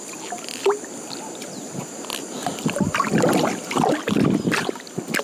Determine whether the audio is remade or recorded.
recorded